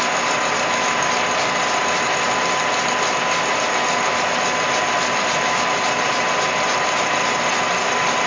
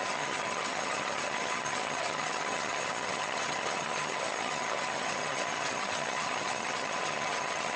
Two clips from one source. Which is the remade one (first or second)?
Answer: second